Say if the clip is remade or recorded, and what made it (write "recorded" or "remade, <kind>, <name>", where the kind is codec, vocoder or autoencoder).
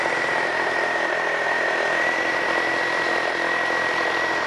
remade, vocoder, BigVGAN v2